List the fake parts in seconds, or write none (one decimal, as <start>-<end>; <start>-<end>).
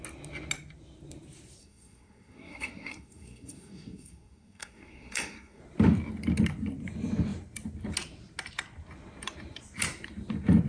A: 1.6-5.6